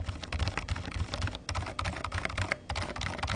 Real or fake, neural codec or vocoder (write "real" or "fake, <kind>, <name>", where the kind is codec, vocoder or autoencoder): real